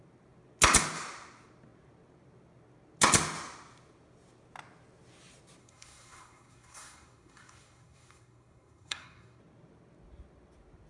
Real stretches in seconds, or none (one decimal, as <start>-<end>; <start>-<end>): 0.0-5.6; 9.4-10.9